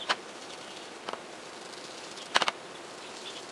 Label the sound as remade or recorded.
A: remade